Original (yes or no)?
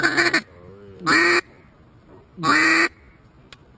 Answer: yes